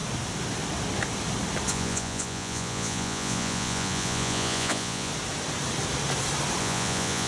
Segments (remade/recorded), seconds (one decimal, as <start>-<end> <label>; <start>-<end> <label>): 0.0-1.7 recorded; 1.7-5.1 remade; 5.1-6.6 recorded; 6.6-7.3 remade